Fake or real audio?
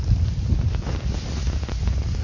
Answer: real